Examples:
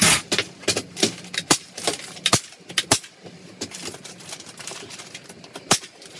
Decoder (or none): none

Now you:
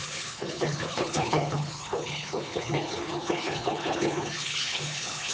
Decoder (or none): codec, HILCodec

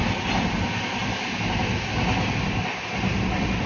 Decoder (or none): none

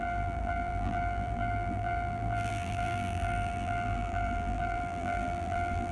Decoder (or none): vocoder, BigVGAN v2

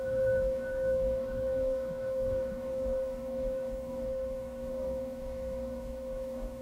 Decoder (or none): codec, DAC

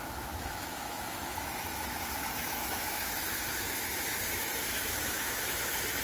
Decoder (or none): autoencoder, DAC-VAE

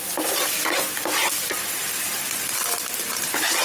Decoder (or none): none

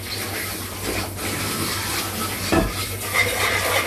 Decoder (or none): none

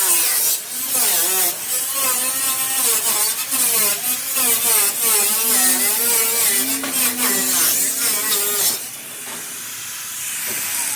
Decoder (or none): none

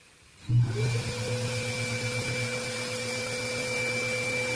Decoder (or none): none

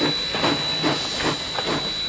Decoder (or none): none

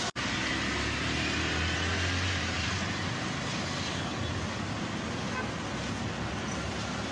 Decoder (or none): none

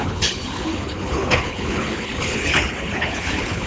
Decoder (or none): codec, HILCodec